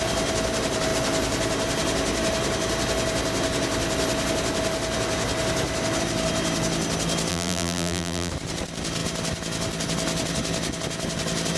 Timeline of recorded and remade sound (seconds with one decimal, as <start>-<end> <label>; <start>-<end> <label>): 0.0-7.3 recorded; 7.3-8.3 remade; 8.3-11.6 recorded